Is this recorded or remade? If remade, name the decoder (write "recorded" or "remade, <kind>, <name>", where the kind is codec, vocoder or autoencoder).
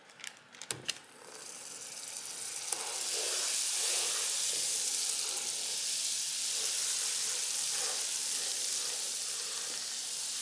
recorded